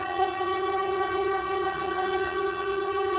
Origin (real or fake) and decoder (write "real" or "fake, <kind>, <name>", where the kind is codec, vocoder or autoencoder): fake, vocoder, HiFi-GAN